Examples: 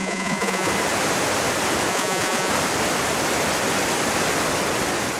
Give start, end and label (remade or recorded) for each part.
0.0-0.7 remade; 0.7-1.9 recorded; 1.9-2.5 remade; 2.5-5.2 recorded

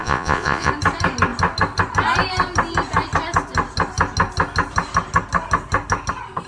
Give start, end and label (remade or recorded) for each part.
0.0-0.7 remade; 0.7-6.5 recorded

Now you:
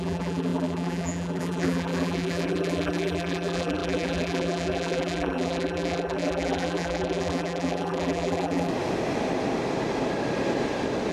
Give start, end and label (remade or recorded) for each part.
0.0-8.7 remade; 8.7-11.1 recorded

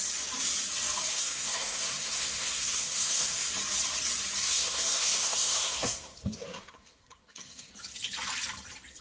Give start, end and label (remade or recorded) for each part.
0.0-1.1 recorded; 1.1-3.5 remade; 3.5-4.4 recorded; 4.4-7.7 remade; 7.7-9.0 recorded

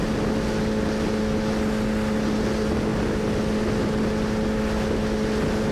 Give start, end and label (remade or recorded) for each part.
0.0-5.7 recorded

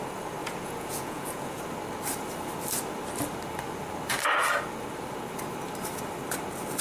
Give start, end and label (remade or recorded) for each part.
0.0-0.4 recorded; 0.4-1.6 remade; 1.6-6.8 recorded

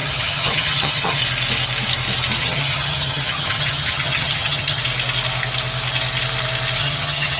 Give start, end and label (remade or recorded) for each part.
0.0-1.2 remade; 1.2-2.4 recorded; 2.4-4.8 remade; 4.8-6.8 recorded; 6.8-7.4 remade